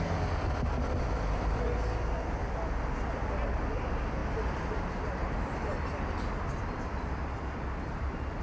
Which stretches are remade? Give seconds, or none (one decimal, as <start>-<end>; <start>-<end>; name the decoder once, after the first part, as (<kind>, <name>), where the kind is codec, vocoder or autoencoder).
none